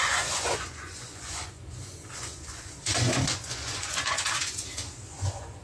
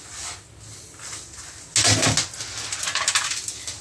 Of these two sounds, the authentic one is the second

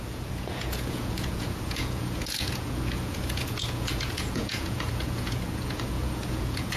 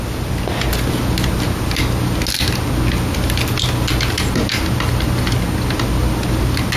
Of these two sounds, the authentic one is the second